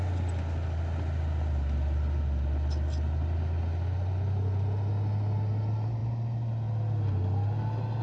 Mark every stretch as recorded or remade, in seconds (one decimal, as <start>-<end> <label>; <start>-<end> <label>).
0.0-8.0 recorded